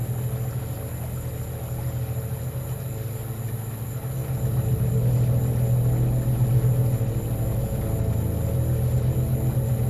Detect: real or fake real